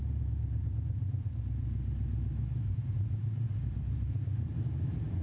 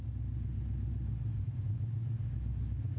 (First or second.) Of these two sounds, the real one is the second